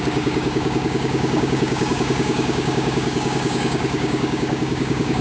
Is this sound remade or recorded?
remade